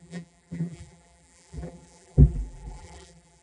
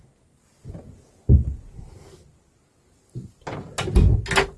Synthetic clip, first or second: first